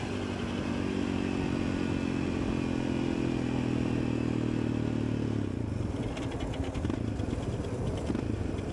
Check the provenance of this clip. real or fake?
real